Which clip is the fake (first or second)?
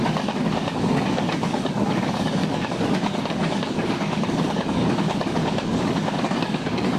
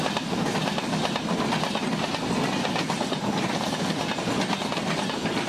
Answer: first